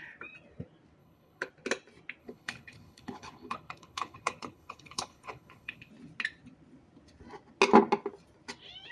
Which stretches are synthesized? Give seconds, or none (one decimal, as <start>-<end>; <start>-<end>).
1.0-1.5; 2.2-5.9